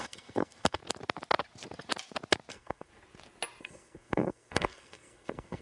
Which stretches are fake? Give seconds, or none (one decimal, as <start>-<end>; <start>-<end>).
0.0-0.8; 2.5-2.9; 3.6-5.6